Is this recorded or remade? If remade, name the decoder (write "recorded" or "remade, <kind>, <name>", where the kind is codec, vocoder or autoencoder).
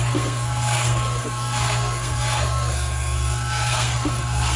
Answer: remade, codec, SNAC